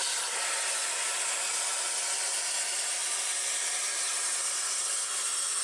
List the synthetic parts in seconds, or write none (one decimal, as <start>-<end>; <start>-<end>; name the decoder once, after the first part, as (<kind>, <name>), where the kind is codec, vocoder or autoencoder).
none